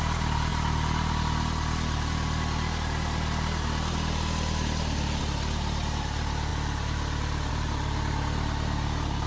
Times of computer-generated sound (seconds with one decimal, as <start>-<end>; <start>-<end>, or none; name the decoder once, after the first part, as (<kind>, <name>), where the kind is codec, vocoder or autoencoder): none